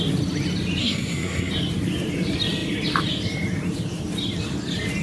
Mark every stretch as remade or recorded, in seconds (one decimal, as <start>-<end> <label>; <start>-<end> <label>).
0.0-0.8 recorded; 0.8-1.5 remade; 1.5-5.0 recorded

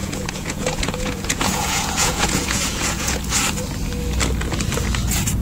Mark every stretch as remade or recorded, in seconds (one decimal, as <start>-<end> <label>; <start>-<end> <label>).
0.0-3.2 remade; 3.2-5.4 recorded

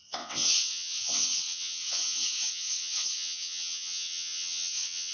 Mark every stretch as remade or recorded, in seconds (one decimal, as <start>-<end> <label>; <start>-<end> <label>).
0.0-5.1 remade

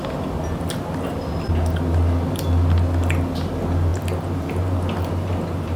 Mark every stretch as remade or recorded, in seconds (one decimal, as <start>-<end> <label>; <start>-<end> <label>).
0.0-5.8 recorded

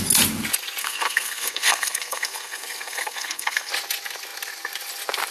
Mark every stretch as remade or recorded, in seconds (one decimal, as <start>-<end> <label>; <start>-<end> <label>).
0.0-0.8 recorded; 0.8-3.7 remade; 3.7-5.3 recorded

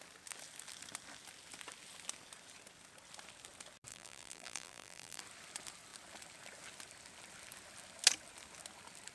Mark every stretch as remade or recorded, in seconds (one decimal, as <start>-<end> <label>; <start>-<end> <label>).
0.0-3.9 recorded; 3.9-5.2 remade; 5.2-9.1 recorded